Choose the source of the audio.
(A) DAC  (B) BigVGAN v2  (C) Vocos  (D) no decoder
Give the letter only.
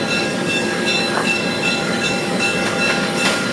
A